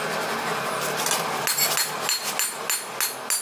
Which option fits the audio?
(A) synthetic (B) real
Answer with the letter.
B